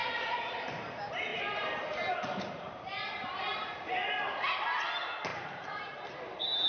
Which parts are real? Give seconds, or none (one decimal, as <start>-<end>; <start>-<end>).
0.7-1.3; 4.2-5.3; 6.1-6.7